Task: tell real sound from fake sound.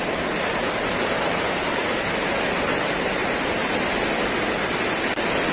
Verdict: real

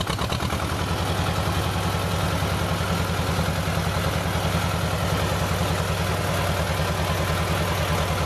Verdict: real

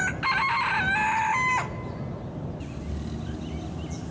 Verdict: real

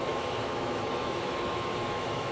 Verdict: fake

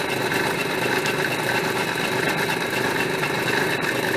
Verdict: real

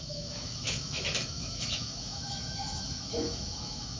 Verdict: fake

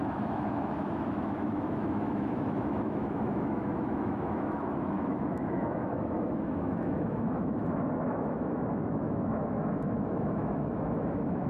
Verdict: fake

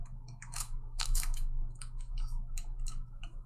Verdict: fake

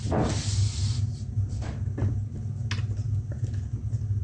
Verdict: real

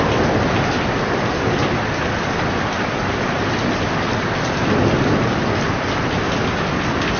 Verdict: real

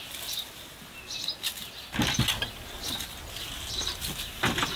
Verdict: real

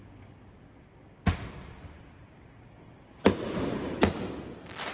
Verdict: real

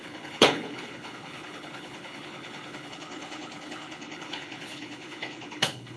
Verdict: fake